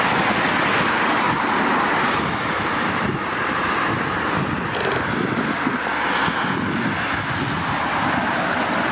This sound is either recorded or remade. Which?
recorded